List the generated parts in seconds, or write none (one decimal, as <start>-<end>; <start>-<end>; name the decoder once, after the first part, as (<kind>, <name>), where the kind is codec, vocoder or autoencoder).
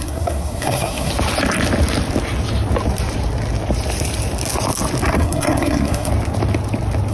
0.0-1.1 (codec, SNAC); 5.1-6.1